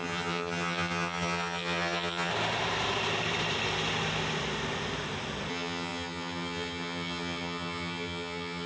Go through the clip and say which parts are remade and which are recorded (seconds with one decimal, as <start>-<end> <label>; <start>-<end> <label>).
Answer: 0.0-2.3 remade; 2.3-5.5 recorded; 5.5-8.7 remade